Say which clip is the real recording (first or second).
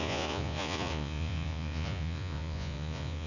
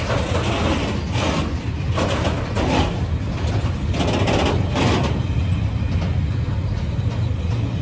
second